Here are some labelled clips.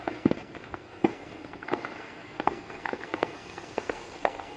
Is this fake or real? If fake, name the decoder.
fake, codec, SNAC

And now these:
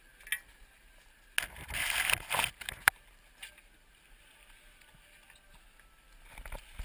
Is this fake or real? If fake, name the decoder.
real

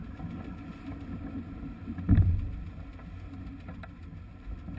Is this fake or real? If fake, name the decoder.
real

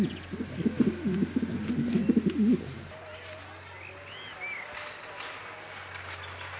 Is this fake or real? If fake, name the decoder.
real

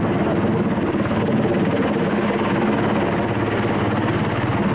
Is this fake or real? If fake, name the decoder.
real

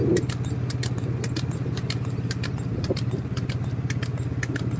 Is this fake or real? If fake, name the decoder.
real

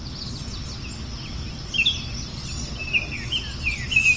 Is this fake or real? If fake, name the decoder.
real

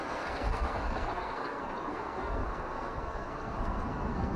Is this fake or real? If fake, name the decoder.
fake, codec, SNAC